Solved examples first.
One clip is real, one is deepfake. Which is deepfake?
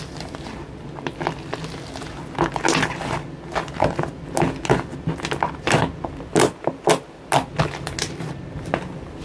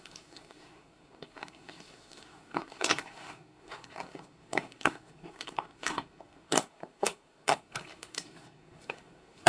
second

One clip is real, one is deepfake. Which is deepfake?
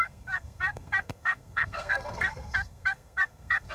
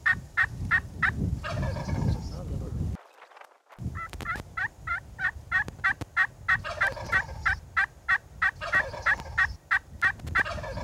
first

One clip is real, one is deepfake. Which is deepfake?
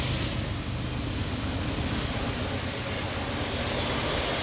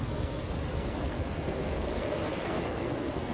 second